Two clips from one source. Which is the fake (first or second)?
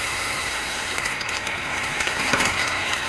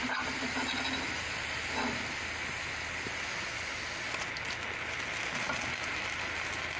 first